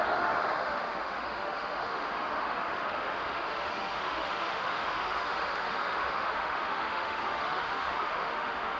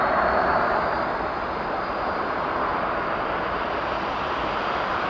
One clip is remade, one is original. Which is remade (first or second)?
first